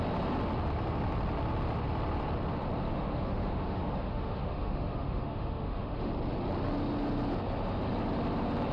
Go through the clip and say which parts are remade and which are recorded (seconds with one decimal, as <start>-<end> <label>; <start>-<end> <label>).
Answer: 0.0-2.9 recorded; 2.9-6.1 remade; 6.1-8.7 recorded